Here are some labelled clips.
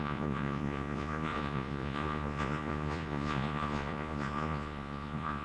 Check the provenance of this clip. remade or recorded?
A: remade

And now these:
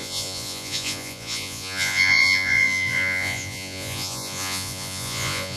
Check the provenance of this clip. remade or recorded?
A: remade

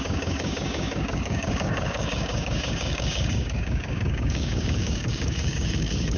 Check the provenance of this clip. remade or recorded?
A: remade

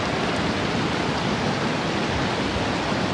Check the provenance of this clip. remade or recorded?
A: recorded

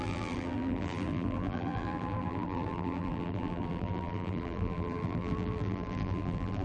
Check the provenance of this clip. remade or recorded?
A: remade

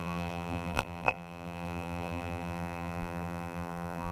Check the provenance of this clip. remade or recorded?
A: remade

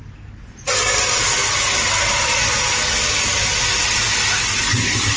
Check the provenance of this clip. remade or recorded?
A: recorded